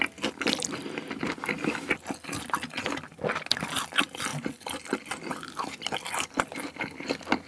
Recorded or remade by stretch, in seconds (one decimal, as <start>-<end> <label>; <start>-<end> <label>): 0.0-7.5 recorded